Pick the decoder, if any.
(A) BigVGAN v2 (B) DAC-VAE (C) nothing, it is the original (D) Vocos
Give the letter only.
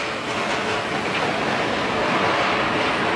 C